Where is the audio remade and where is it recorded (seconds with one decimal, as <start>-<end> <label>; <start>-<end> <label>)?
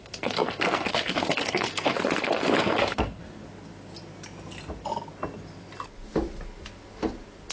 0.0-3.2 remade; 3.2-7.5 recorded